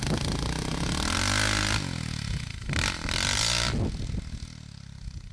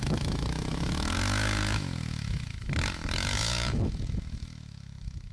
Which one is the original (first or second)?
first